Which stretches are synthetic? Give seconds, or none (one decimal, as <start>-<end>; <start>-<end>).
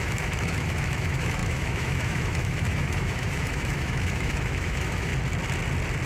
0.0-5.1